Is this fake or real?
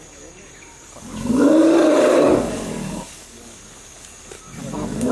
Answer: fake